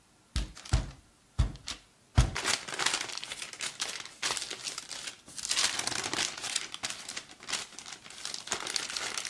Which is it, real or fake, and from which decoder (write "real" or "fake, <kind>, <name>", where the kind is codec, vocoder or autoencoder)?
real